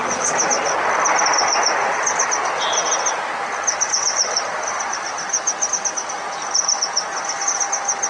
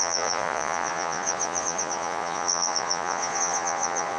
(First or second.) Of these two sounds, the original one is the first